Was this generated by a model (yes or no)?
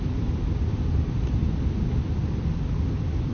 no